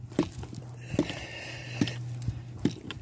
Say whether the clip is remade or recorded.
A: recorded